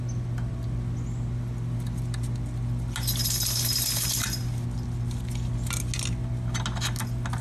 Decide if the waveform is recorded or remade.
recorded